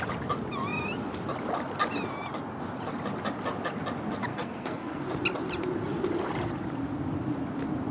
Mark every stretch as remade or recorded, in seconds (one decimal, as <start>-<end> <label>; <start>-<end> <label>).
0.0-4.3 recorded; 4.3-5.0 remade; 5.0-7.9 recorded